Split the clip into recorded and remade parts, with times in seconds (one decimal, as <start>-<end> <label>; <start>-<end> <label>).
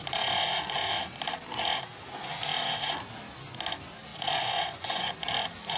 0.0-0.5 remade; 0.5-4.1 recorded; 4.1-5.1 remade; 5.1-5.8 recorded